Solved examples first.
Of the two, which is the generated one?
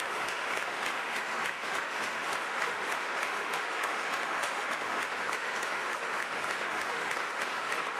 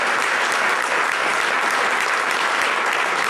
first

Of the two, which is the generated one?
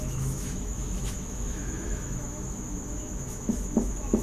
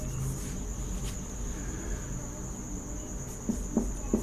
first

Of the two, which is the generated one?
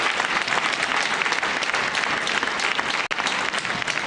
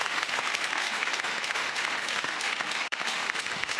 second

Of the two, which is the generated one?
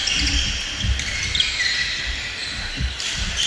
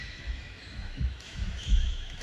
second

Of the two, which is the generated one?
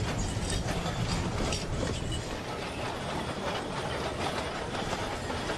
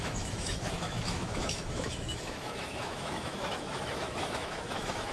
second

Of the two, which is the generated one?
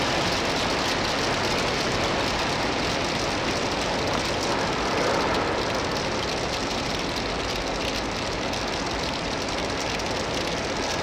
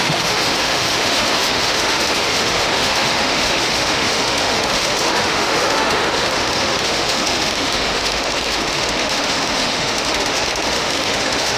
second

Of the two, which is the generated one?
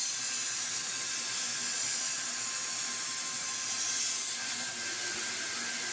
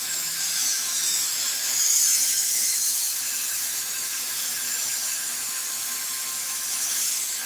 second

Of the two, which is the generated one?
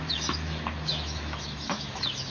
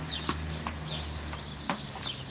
first